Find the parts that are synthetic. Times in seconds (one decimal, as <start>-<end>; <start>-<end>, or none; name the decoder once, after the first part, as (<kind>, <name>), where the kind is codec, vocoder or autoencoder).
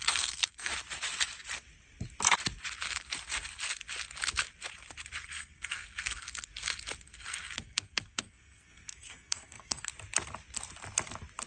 0.0-0.7 (codec, SNAC); 5.2-6.5; 7.0-9.9